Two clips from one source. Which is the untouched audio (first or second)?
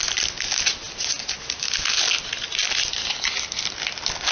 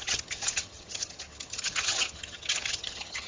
first